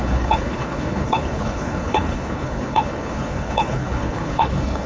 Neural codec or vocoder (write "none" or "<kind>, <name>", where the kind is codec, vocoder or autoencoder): codec, HILCodec